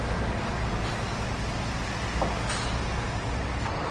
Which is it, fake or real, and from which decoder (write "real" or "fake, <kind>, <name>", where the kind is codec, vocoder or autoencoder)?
real